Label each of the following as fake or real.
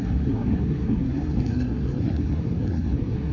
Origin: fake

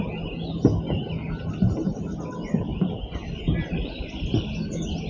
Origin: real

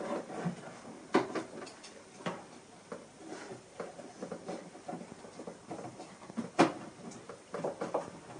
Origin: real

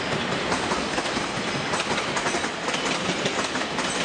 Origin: real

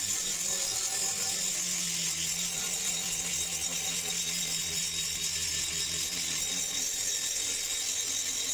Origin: real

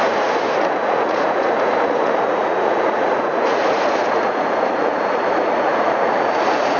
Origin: fake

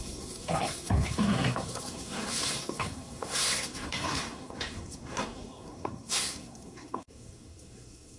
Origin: fake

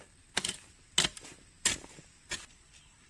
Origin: real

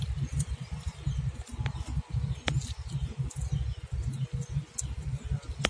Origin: real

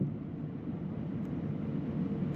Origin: real